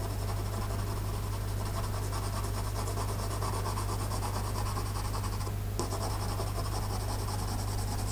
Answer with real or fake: real